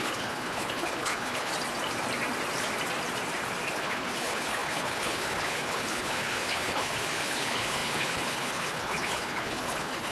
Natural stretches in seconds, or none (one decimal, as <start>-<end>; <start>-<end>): 1.5-3.8